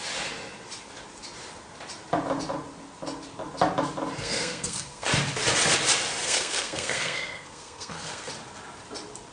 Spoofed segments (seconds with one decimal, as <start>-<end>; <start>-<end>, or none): 4.2-5.1; 6.2-8.3